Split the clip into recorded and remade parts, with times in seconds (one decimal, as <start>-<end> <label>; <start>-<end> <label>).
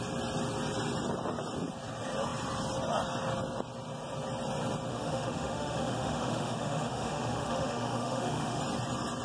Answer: 0.0-4.9 recorded; 4.9-8.6 remade; 8.6-9.2 recorded